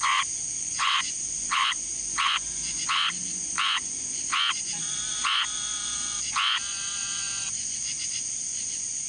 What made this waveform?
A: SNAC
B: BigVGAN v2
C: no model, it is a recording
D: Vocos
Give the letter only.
D